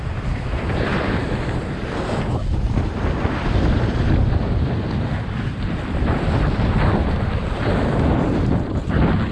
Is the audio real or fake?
real